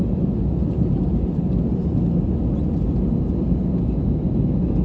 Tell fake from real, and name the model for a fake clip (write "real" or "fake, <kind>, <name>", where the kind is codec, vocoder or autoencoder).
real